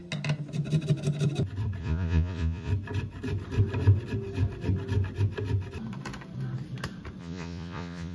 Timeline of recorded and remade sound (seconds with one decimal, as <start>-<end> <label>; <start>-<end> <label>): 0.0-1.8 recorded; 1.8-2.7 remade; 2.7-7.2 recorded; 7.2-8.1 remade